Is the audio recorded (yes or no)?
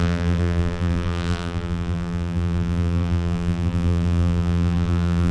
no